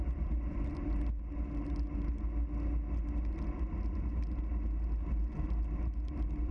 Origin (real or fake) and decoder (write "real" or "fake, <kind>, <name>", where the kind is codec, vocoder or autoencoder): real